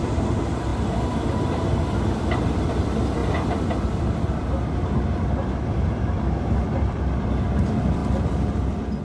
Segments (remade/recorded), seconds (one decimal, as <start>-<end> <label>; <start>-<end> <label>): 0.0-8.0 remade; 8.0-9.0 recorded